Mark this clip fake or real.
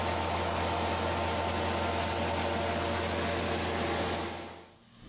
real